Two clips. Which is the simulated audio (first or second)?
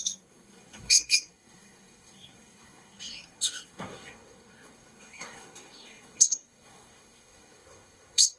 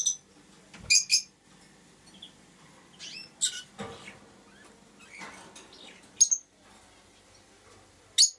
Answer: first